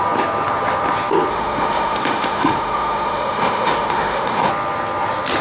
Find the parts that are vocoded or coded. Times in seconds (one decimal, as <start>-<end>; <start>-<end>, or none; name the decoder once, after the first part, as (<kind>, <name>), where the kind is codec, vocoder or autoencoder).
1.3-4.5 (autoencoder, DAC-VAE)

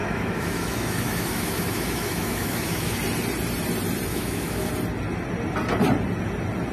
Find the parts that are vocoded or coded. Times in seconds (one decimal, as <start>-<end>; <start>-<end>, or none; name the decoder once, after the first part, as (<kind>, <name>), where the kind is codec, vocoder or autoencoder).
0.0-3.0 (autoencoder, DAC-VAE); 4.1-4.7

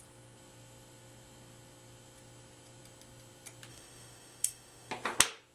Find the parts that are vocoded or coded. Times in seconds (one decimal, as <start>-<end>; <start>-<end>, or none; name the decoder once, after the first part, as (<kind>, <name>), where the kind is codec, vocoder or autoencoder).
3.7-4.9 (autoencoder, DAC-VAE)

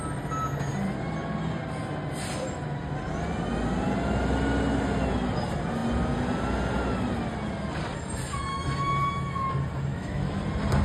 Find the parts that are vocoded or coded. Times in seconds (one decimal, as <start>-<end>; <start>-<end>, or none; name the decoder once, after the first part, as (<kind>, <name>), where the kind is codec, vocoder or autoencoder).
8.5-9.5 (autoencoder, DAC-VAE); 9.9-10.4

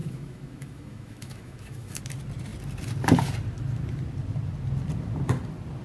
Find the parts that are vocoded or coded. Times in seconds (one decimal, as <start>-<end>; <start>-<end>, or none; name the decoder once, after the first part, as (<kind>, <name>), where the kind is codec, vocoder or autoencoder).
0.0-2.0 (autoencoder, DAC-VAE)